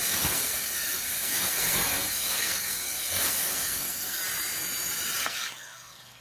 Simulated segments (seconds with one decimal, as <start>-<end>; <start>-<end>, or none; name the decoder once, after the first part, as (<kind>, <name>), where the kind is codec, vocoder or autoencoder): 0.0-4.2 (codec, SNAC); 5.2-6.2